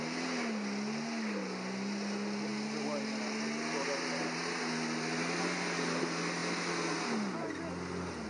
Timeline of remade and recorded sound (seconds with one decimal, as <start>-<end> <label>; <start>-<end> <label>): 0.0-8.3 recorded